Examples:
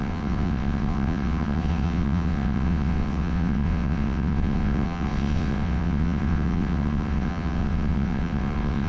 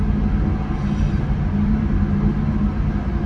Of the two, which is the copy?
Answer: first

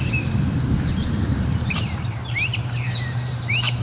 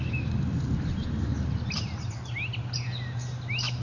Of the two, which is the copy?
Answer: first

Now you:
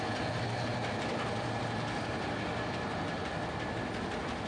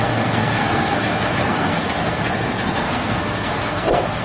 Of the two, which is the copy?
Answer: second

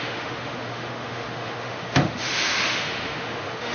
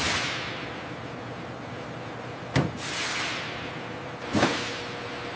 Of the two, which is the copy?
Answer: first